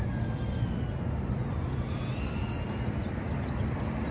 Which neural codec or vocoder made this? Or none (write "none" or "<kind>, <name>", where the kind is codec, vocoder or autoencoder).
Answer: none